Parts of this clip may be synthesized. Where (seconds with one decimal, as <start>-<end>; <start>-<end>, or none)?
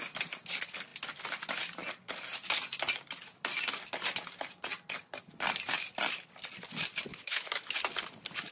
7.1-7.8